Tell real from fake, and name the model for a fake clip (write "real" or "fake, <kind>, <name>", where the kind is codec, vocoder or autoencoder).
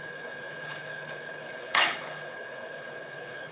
fake, codec, HILCodec